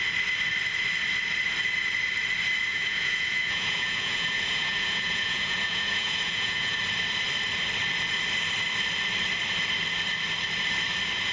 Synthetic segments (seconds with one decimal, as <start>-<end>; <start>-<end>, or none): 2.7-6.8